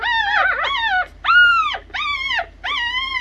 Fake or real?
real